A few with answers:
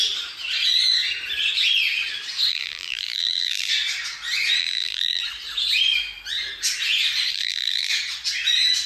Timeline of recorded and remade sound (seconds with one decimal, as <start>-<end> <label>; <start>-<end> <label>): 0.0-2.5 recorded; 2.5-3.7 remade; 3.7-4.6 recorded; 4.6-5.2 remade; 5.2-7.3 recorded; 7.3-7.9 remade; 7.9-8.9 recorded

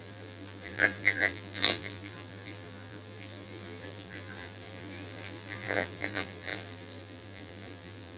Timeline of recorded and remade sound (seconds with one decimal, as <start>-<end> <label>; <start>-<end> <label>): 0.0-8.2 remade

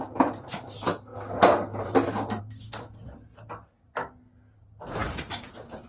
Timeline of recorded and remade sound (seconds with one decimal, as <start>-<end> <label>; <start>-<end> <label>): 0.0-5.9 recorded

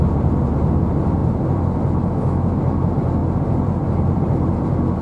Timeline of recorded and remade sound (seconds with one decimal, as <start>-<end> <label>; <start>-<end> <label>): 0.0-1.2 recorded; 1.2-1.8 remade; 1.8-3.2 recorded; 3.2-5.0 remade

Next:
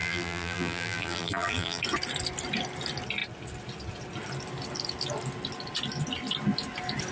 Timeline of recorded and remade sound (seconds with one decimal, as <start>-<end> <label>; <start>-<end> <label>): 0.0-1.8 remade; 1.8-7.1 recorded